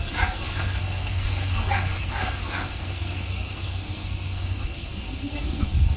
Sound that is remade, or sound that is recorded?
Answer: remade